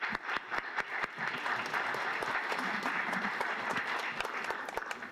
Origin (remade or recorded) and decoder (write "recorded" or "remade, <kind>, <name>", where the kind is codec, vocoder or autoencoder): recorded